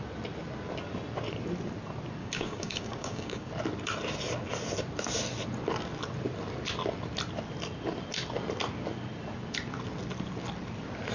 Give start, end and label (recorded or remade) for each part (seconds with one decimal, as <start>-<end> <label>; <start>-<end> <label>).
0.0-2.2 recorded; 2.2-3.5 remade; 3.5-11.1 recorded